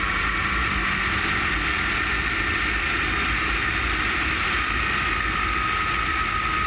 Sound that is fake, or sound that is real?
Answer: real